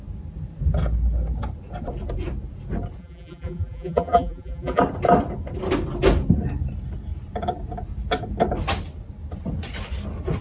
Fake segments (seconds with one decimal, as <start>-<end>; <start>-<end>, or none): 3.0-4.8